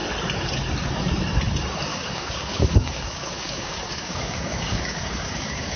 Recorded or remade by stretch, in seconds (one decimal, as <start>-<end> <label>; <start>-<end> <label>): 0.0-1.9 recorded; 1.9-5.8 remade